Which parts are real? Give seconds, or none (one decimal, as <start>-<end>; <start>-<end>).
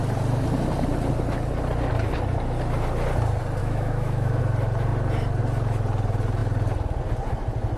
0.0-3.6; 4.4-7.8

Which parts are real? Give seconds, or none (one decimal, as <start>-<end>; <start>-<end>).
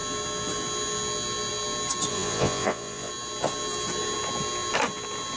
0.0-2.1; 3.1-5.4